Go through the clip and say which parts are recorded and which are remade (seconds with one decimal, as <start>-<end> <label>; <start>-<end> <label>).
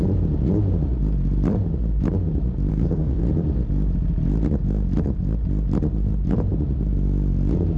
0.0-2.7 recorded; 2.7-3.2 remade; 3.2-7.8 recorded